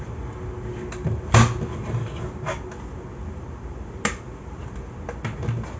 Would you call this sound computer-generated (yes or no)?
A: no